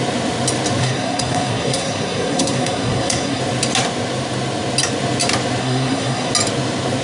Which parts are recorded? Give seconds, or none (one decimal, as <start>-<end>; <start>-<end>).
0.0-0.8; 3.4-5.6; 6.3-7.0

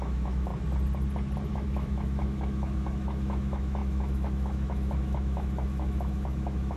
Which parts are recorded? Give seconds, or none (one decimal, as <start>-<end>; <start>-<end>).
0.5-1.5

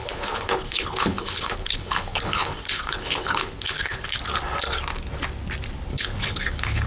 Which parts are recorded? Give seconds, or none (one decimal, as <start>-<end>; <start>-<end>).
4.1-5.9

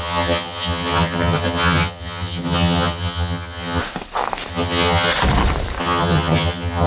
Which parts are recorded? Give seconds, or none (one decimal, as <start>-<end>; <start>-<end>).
3.8-4.5; 5.1-5.8

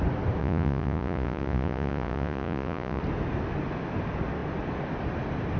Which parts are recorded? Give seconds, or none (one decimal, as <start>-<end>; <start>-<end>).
0.0-0.4; 3.0-5.6

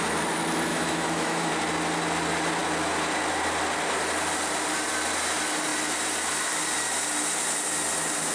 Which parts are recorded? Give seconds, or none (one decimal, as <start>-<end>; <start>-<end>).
0.0-0.7; 1.5-8.3

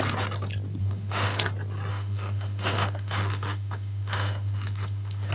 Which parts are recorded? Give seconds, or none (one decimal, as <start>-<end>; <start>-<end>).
0.0-0.8; 1.4-1.9

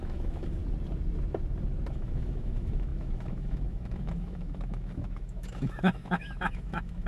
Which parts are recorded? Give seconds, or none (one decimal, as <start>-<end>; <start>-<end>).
0.6-1.9